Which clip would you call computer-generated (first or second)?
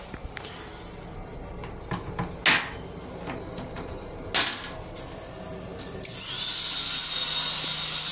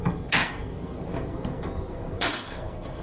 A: second